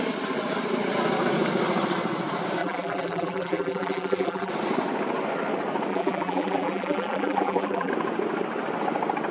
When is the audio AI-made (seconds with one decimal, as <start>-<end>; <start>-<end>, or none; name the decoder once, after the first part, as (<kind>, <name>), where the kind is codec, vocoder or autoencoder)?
2.6-4.5 (vocoder, BigVGAN v2); 5.9-7.9

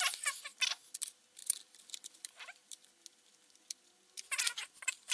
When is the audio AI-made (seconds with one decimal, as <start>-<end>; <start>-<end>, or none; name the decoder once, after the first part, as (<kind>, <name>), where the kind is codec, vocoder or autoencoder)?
1.4-2.9 (vocoder, BigVGAN v2)